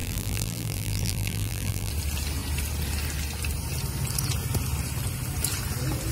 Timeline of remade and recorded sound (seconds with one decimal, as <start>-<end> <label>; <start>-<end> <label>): 0.0-1.9 remade; 1.9-6.1 recorded